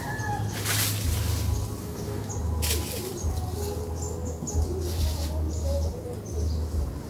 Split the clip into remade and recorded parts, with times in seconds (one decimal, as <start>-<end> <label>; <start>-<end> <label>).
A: 0.0-1.8 recorded; 1.8-2.3 remade; 2.3-7.1 recorded